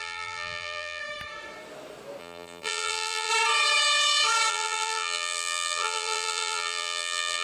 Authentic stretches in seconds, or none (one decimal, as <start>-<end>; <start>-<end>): 1.0-2.2; 3.3-4.5